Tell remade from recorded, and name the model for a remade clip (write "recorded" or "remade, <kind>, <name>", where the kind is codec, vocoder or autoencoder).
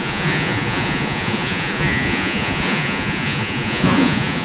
remade, vocoder, Vocos